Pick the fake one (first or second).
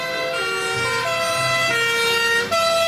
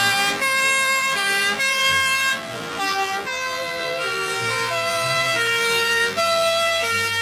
second